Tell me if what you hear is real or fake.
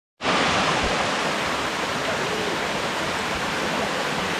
real